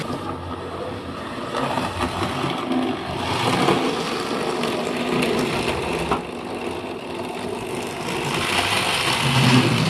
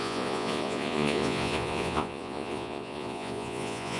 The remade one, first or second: second